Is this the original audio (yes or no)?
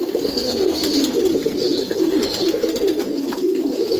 no